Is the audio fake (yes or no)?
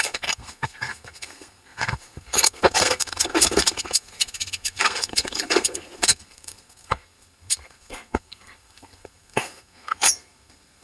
yes